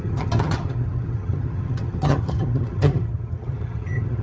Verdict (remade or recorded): remade